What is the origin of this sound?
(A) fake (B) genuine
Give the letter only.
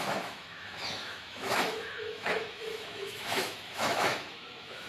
A